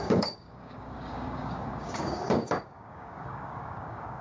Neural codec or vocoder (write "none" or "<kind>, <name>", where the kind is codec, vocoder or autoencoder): codec, DAC